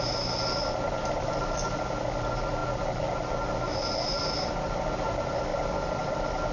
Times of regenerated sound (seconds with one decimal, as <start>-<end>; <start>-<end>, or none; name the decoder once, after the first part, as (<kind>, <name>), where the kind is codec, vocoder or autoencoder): none